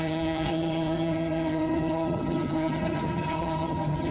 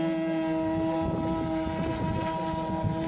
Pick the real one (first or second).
second